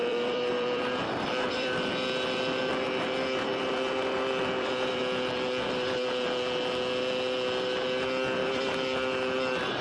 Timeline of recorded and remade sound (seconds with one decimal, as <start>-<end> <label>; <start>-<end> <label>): 0.0-1.9 remade; 1.9-3.5 recorded; 3.5-5.0 remade; 5.0-8.4 recorded; 8.4-9.8 remade